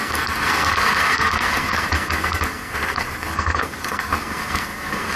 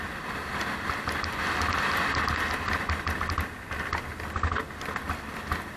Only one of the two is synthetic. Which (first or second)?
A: first